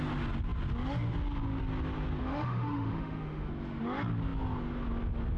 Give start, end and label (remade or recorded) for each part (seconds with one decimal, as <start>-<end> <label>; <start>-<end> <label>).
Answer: 0.0-2.2 recorded; 2.2-3.5 remade; 3.5-5.4 recorded

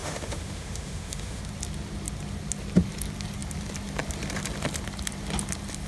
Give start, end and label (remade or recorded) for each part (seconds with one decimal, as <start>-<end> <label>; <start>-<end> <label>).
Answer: 0.0-1.4 remade; 1.4-5.9 recorded

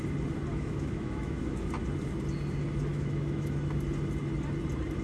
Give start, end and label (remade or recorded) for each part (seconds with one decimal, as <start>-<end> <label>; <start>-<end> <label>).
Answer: 0.0-0.5 recorded; 0.5-1.7 remade; 1.7-2.9 recorded; 2.9-3.8 remade; 3.8-5.0 recorded

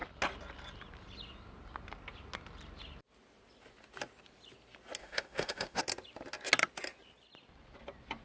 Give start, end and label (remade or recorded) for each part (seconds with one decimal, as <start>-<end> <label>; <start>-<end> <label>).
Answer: 0.0-5.0 recorded; 5.0-5.8 remade; 5.8-8.2 recorded

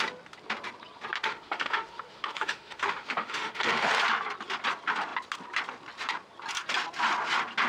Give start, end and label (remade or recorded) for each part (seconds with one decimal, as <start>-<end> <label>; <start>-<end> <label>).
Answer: 0.0-1.3 recorded; 1.3-3.9 remade; 3.9-7.7 recorded

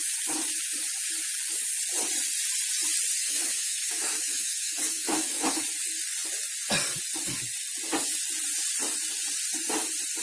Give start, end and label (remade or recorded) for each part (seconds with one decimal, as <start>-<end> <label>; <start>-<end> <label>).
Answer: 0.0-3.2 recorded; 3.2-5.5 remade; 5.5-10.2 recorded

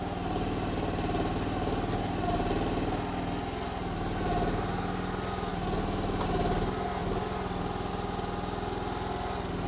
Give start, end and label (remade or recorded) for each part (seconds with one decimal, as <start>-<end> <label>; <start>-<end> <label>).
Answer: 0.0-9.7 recorded